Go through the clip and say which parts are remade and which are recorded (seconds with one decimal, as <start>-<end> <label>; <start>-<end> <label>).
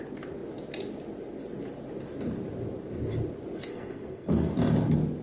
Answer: 0.0-3.7 recorded; 3.7-4.5 remade; 4.5-5.2 recorded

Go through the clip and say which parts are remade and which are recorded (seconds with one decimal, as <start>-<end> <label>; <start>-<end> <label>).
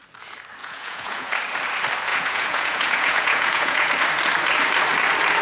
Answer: 0.0-0.6 recorded; 0.6-1.3 remade; 1.3-2.1 recorded; 2.1-3.9 remade; 3.9-5.4 recorded